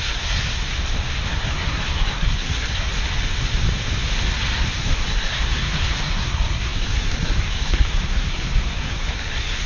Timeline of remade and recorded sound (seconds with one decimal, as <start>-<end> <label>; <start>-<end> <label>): 0.0-0.7 remade; 0.7-1.3 recorded; 1.3-2.9 remade; 2.9-4.8 recorded; 4.8-9.7 remade